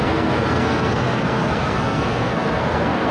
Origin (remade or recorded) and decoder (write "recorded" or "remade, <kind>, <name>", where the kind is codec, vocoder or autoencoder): remade, codec, SNAC